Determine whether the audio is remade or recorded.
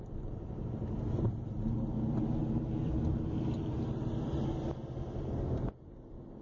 recorded